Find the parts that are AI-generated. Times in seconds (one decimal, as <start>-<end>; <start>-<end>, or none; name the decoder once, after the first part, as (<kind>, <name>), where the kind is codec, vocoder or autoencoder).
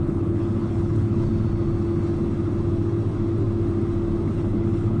0.0-1.3 (codec, HILCodec); 4.3-5.0